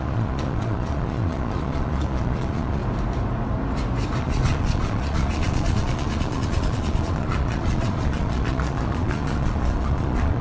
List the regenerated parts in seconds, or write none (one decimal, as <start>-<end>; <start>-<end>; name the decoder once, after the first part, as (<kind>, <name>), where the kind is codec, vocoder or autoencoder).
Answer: 0.0-2.8 (vocoder, Vocos); 4.2-10.4